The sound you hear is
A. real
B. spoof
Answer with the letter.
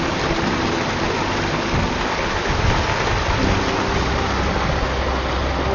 A